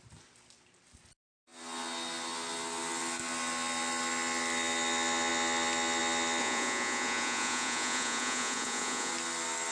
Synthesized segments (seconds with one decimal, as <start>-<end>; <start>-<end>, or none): 6.4-9.1